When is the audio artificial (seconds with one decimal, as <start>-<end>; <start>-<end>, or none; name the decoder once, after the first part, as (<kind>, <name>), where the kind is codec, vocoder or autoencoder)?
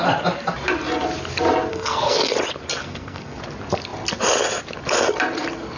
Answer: 1.7-2.3 (codec, SNAC); 2.8-3.4